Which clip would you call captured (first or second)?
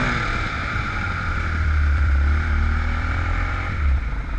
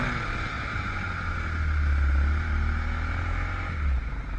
second